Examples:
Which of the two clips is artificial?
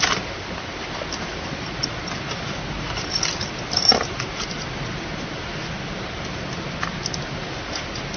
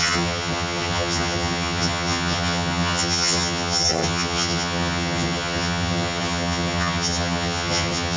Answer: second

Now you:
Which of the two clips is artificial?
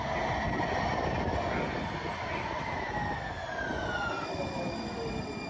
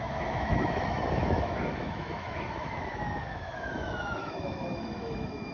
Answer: second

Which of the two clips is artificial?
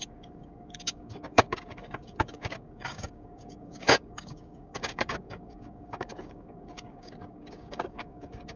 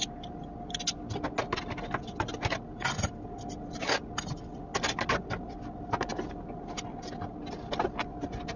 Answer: first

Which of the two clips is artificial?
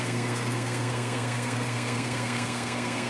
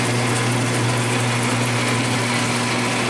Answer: first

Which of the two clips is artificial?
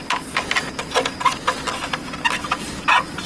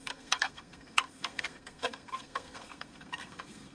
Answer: second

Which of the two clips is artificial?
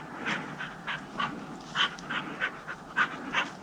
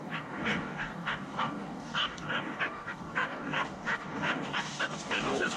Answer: second